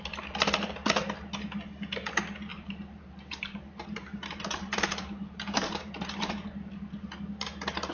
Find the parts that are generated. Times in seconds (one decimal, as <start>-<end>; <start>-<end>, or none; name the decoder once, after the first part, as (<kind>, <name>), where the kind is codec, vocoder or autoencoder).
2.5-7.2 (vocoder, BigVGAN v2)